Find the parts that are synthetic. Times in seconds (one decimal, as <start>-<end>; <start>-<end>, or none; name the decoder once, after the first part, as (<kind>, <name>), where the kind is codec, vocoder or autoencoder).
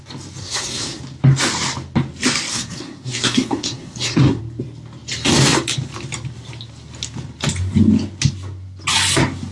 0.4-1.0 (codec, SNAC); 2.5-4.4